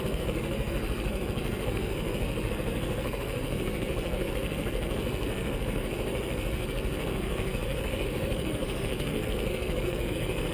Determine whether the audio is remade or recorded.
remade